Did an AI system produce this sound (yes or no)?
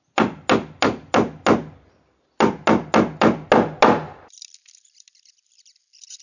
no